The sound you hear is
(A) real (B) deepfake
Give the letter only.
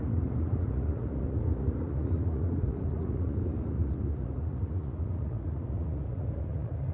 B